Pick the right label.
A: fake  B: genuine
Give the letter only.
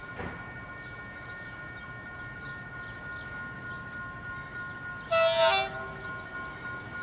B